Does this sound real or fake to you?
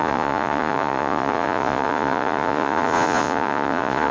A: fake